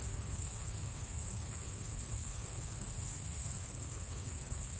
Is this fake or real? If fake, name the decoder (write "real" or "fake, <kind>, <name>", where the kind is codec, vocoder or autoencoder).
fake, codec, SNAC